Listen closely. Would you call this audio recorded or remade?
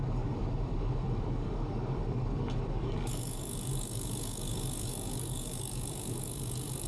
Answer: remade